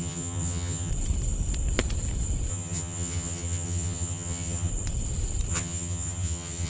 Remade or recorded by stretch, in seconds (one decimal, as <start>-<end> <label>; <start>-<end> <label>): 0.0-0.9 remade; 0.9-2.5 recorded; 2.5-4.7 remade; 4.7-5.5 recorded; 5.5-6.7 remade